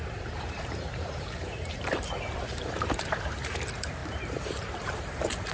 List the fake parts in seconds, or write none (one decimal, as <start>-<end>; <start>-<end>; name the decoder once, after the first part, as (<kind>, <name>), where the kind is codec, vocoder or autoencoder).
0.0-5.5 (vocoder, BigVGAN v2)